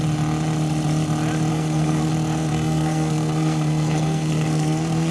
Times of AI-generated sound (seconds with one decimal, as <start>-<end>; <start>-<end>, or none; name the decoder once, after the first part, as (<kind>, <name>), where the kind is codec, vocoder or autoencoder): 1.5-2.1 (codec, SNAC); 2.5-5.1